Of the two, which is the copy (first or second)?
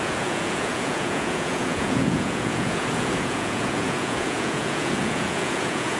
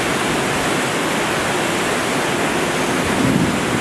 first